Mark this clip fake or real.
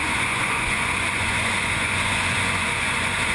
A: fake